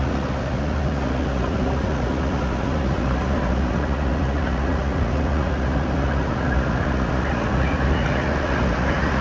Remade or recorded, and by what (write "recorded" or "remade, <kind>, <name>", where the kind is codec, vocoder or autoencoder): remade, vocoder, Vocos